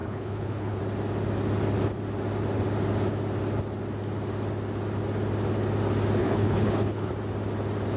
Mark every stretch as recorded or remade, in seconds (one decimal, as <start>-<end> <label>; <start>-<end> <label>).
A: 0.0-0.8 remade; 0.8-6.2 recorded; 6.2-7.1 remade; 7.1-8.0 recorded